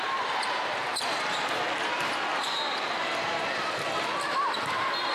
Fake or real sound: fake